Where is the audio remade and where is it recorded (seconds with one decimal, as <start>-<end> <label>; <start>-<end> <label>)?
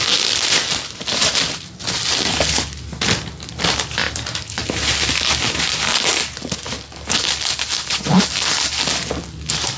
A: 0.0-9.8 recorded